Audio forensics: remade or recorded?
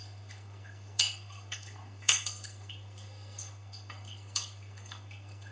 remade